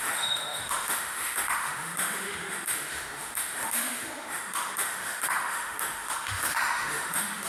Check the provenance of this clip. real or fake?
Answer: fake